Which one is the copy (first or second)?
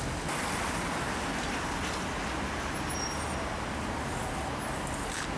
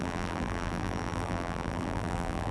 second